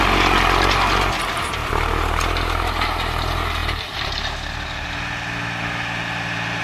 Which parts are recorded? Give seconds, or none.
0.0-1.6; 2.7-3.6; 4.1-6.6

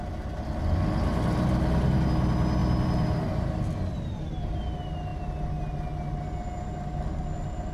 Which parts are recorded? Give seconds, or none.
0.0-7.7

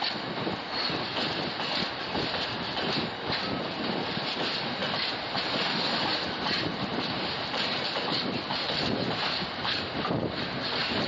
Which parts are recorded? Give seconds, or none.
0.0-4.8; 9.9-11.1

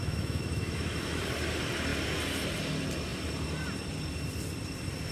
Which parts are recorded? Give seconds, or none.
1.2-5.1

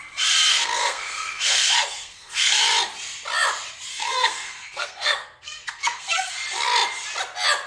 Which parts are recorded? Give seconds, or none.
0.0-0.5; 2.6-3.9; 6.3-7.7

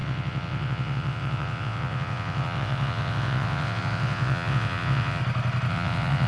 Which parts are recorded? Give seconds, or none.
5.2-5.7